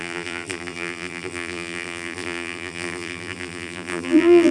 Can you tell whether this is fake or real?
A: fake